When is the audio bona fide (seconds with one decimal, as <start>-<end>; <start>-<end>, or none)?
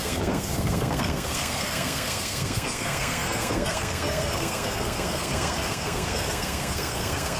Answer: none